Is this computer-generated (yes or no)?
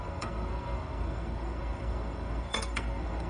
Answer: yes